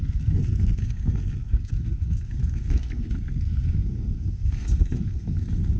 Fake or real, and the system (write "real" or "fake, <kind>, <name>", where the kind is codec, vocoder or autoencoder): fake, codec, SNAC